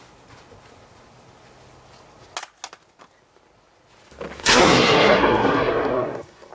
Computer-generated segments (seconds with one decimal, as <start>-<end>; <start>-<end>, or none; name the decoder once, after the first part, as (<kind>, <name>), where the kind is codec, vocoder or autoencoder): 4.4-6.5 (codec, SNAC)